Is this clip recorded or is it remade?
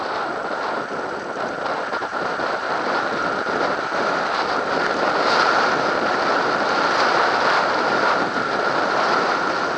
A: recorded